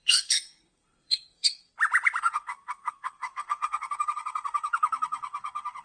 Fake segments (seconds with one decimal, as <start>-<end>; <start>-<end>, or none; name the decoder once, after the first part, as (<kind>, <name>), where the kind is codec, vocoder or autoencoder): 0.0-1.7 (codec, SNAC); 2.2-5.8